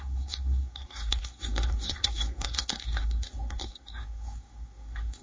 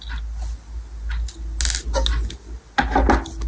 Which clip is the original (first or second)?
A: second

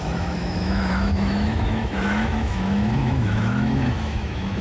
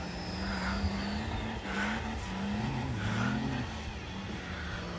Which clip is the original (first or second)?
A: second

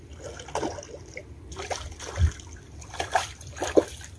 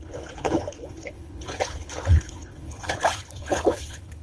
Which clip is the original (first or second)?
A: first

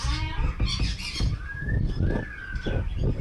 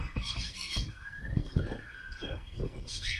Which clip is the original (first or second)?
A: first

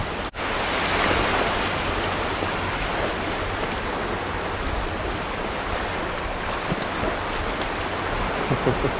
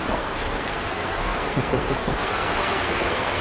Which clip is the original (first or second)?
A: first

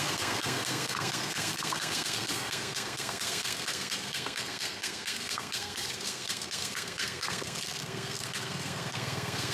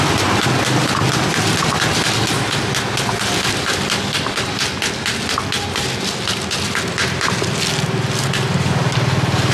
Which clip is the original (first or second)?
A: second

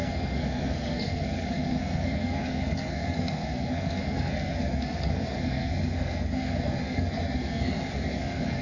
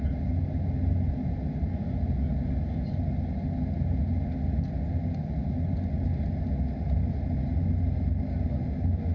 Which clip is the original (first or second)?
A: second